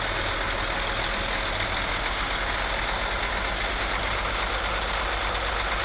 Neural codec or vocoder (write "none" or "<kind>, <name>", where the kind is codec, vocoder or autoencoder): none